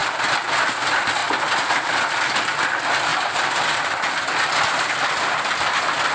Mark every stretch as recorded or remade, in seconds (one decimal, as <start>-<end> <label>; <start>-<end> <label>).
0.0-1.2 recorded; 1.2-1.9 remade; 1.9-3.1 recorded; 3.1-4.9 remade; 4.9-6.1 recorded